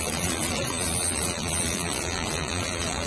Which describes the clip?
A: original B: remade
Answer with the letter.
B